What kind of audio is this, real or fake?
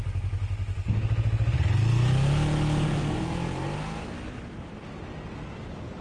real